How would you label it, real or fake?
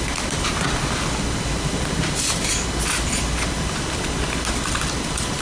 real